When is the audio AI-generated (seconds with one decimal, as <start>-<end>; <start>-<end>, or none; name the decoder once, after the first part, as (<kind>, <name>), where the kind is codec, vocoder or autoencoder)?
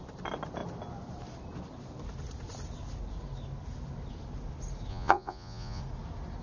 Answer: 4.9-5.8 (vocoder, Vocos)